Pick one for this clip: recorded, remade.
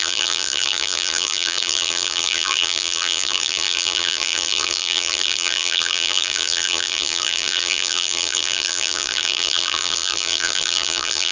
remade